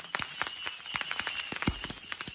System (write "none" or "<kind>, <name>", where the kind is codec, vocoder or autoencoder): none